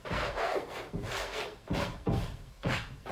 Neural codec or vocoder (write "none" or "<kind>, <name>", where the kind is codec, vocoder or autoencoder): codec, SNAC